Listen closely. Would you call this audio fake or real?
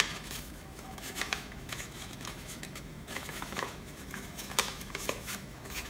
fake